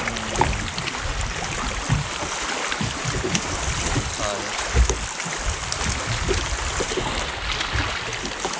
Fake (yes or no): no